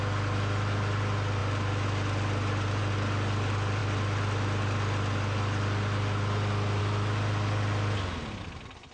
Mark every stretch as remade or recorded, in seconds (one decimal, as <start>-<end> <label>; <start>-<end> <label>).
0.0-8.9 recorded

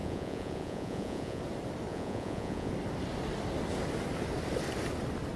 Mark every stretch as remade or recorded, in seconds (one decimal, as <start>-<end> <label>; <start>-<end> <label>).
0.0-1.4 remade; 1.4-1.9 recorded; 1.9-2.7 remade; 2.7-5.4 recorded

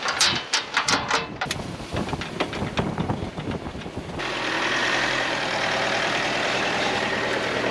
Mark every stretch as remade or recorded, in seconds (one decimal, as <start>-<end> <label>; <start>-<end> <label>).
0.0-4.8 recorded; 4.8-7.7 remade

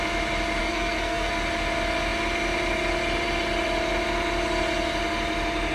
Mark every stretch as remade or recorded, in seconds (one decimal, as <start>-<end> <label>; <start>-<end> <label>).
0.0-0.6 recorded; 0.6-1.3 remade; 1.3-5.7 recorded

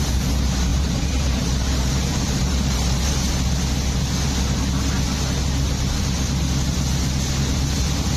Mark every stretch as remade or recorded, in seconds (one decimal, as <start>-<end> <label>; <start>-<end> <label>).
0.0-0.7 recorded; 0.7-3.3 remade; 3.3-8.2 recorded

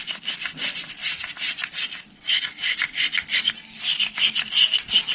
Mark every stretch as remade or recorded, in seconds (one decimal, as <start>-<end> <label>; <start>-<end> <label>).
0.0-5.1 recorded